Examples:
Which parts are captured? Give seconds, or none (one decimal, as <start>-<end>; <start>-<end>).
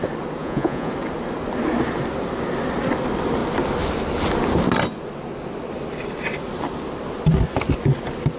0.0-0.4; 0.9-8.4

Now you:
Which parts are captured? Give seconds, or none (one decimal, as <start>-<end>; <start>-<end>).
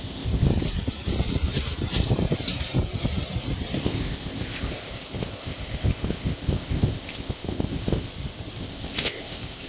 0.5-3.8; 8.1-8.6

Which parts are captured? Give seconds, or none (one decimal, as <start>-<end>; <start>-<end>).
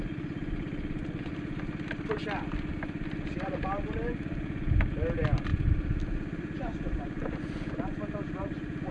0.0-8.9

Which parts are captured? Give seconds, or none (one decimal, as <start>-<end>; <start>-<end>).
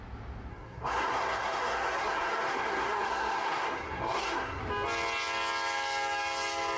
0.0-0.5; 4.6-6.8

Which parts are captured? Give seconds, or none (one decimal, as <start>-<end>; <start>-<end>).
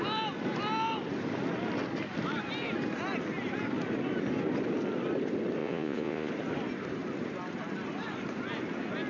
0.0-5.6; 6.3-9.1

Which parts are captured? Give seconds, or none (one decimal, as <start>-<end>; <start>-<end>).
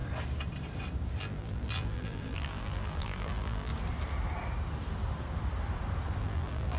0.0-1.2; 3.7-6.2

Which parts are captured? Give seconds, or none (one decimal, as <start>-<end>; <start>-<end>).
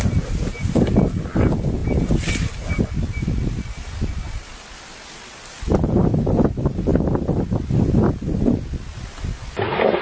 0.0-10.0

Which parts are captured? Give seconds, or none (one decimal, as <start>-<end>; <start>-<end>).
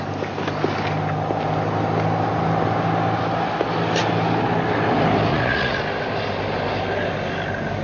0.0-5.3; 5.8-7.8